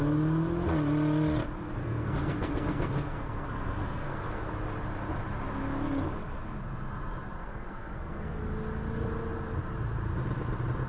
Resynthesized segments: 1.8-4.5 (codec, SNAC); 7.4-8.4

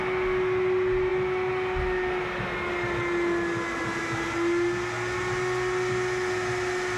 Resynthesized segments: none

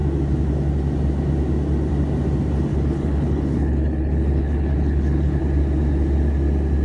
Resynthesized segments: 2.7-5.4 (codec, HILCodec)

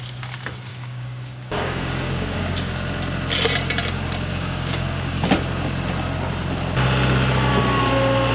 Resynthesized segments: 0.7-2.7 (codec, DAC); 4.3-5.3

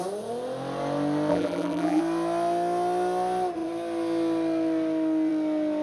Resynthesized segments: 1.3-2.0 (vocoder, BigVGAN v2)

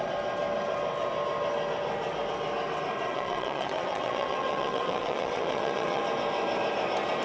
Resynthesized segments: 3.1-6.0 (vocoder, WaveNeXt)